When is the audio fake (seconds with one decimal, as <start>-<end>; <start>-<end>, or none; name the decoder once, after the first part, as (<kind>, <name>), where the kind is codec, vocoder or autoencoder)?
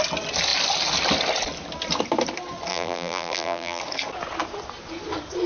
2.7-3.8 (vocoder, BigVGAN v2)